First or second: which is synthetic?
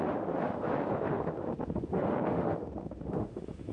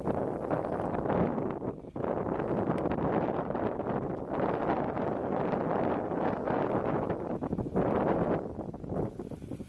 first